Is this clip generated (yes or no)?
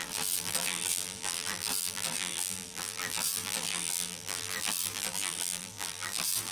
yes